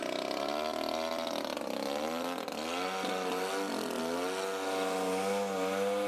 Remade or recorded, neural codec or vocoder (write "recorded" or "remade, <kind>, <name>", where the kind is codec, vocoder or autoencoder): recorded